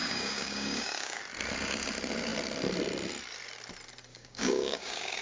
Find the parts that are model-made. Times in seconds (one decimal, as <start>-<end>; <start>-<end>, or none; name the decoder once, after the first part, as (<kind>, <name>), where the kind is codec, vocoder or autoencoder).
0.0-1.2 (codec, DAC); 4.1-5.2